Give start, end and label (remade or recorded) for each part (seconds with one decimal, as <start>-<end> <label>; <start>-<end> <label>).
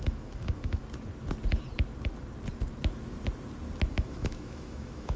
0.0-0.8 remade; 0.8-3.9 recorded; 3.9-5.2 remade